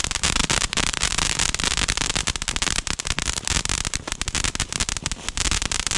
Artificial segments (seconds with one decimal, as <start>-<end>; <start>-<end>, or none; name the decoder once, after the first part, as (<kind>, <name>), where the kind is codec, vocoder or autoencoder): none